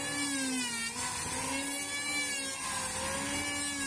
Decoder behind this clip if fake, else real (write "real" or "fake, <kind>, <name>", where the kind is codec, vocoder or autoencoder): real